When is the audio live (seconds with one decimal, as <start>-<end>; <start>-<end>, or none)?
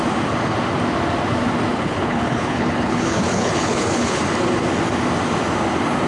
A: 0.0-1.7; 4.2-6.1